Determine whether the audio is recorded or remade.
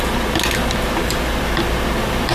recorded